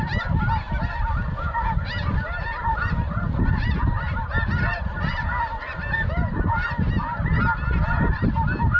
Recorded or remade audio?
recorded